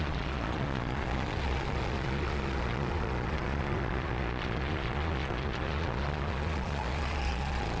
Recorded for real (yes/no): no